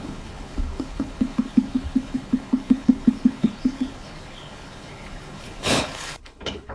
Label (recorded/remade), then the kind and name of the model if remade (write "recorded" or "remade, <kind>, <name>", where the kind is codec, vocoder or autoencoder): remade, codec, HILCodec